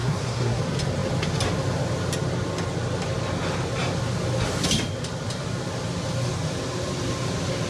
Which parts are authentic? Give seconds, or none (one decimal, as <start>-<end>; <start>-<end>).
0.6-7.7